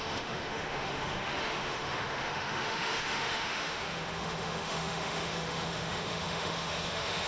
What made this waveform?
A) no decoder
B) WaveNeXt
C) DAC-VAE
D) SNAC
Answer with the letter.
C